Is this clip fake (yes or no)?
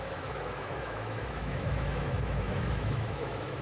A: yes